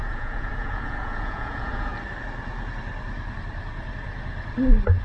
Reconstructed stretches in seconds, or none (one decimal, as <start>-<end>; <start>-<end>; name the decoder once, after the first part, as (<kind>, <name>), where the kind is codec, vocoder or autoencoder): 0.0-1.9 (vocoder, Vocos)